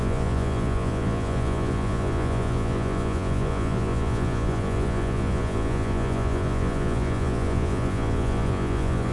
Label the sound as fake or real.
fake